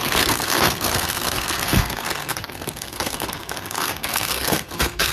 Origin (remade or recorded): remade